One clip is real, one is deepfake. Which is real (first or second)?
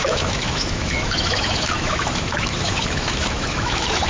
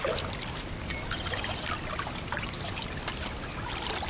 second